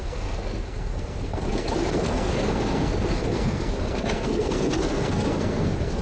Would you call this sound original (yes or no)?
no